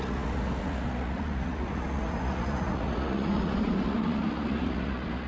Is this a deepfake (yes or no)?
yes